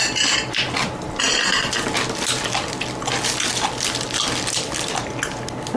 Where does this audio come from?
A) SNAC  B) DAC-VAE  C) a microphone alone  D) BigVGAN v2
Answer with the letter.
C